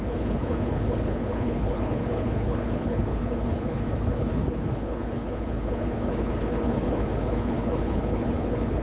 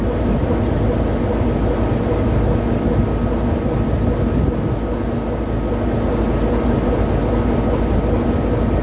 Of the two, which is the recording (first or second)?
second